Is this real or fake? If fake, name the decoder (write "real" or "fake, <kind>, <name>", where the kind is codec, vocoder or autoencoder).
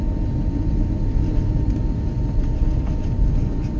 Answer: real